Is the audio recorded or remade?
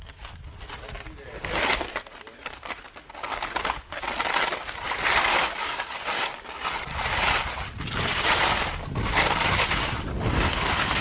recorded